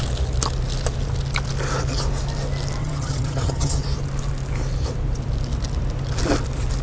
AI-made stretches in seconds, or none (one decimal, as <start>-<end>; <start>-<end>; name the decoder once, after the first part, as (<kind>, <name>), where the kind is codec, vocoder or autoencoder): 2.8-3.8 (vocoder, HiFi-GAN)